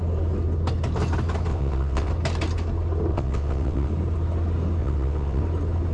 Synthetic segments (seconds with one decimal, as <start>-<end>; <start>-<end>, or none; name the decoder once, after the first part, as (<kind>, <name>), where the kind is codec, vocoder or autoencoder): 1.5-2.1 (vocoder, WaveNeXt); 3.1-3.9; 4.8-5.4